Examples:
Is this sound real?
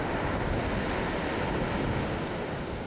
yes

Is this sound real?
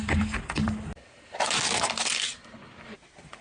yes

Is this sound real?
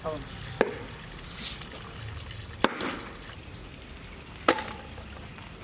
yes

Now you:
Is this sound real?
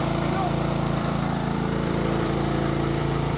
no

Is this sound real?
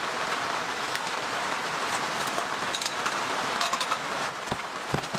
yes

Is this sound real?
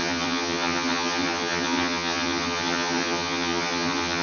no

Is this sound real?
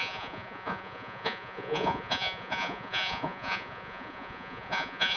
no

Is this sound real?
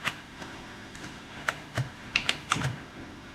no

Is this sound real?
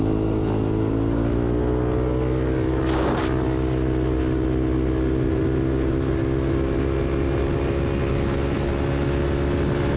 yes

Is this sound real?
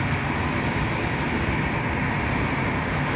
yes